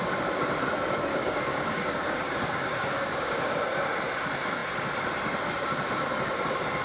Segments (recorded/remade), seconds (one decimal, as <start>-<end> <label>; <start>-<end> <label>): 0.0-1.1 recorded; 1.1-3.5 remade; 3.5-6.8 recorded